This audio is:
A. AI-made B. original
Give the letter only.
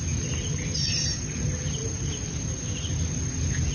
B